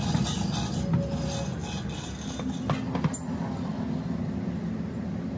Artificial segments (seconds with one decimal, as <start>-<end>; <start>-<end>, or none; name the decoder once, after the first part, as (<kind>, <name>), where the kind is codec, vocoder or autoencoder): none